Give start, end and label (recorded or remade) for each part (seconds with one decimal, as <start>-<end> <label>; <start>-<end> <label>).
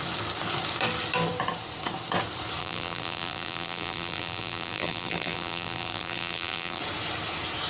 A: 0.0-2.6 recorded; 2.6-6.8 remade; 6.8-7.7 recorded